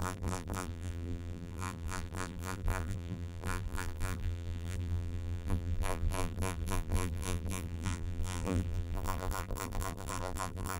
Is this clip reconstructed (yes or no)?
yes